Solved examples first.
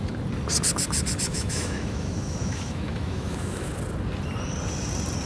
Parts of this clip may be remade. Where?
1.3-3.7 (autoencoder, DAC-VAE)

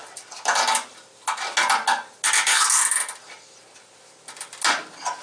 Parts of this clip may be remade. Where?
none

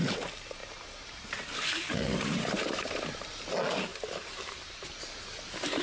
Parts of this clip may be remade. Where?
0.6-3.4 (vocoder, BigVGAN v2); 3.9-5.0

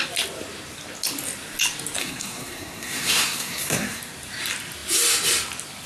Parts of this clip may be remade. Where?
2.0-4.0 (codec, SNAC)

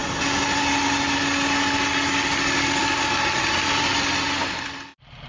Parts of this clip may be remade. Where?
none

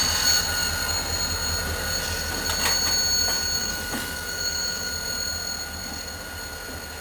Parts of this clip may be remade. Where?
3.6-4.9 (autoencoder, DAC-VAE)

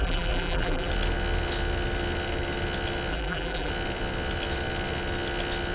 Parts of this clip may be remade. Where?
0.0-0.9 (vocoder, BigVGAN v2); 3.1-3.7